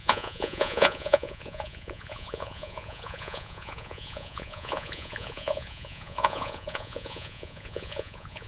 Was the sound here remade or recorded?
remade